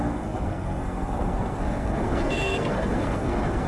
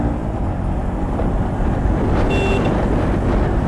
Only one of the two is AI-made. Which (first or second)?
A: first